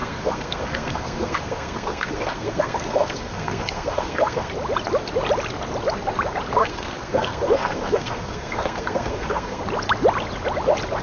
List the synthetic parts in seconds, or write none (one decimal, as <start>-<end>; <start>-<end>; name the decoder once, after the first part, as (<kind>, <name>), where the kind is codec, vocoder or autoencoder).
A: 0.0-4.5 (codec, SNAC); 6.6-9.6